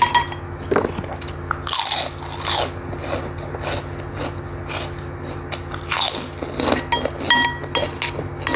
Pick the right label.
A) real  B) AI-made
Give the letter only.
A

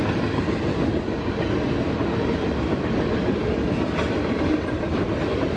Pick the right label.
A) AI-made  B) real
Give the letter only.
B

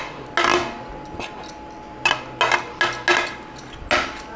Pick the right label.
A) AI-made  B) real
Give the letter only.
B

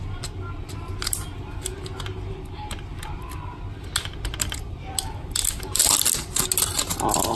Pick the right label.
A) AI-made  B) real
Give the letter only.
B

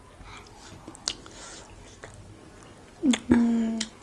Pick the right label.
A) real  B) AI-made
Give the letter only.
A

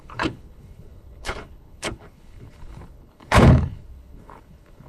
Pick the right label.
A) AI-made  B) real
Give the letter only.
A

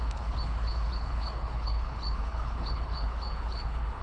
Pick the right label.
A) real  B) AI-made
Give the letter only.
B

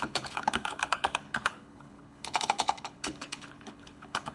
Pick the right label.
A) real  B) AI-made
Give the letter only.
B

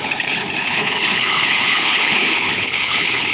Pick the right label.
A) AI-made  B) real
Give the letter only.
A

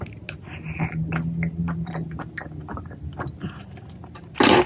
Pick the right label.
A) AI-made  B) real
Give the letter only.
B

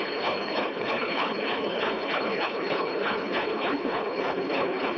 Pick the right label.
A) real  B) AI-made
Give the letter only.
B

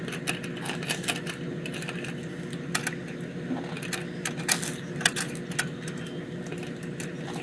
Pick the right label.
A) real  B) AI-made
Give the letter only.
A